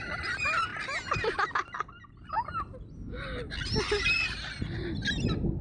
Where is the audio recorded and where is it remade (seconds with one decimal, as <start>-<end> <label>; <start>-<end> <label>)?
0.0-5.6 recorded